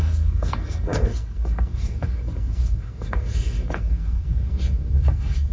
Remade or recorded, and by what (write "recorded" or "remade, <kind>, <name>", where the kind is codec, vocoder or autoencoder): remade, codec, SNAC